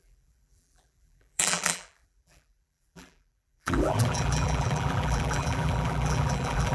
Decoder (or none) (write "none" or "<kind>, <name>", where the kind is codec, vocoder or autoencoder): vocoder, BigVGAN v2